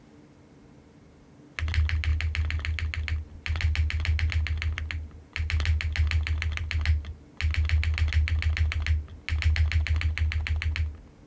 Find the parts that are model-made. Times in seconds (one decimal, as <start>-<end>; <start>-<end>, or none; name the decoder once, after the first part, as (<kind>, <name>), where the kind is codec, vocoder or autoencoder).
none